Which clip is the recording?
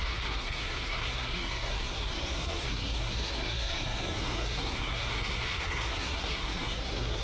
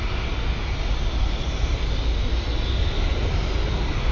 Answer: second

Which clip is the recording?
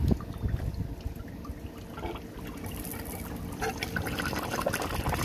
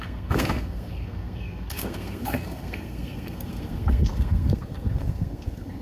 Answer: first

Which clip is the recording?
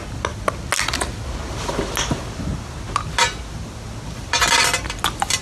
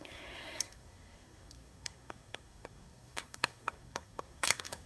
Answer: first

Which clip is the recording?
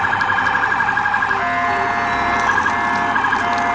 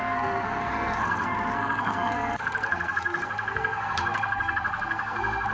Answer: first